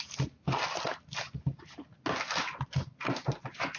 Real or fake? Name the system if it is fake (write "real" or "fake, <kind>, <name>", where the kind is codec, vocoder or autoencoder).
real